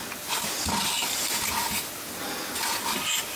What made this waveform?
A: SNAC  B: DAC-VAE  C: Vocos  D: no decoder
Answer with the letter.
D